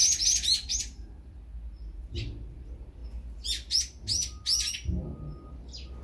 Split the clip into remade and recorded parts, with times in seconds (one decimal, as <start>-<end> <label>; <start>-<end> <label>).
0.0-1.3 remade; 1.3-6.0 recorded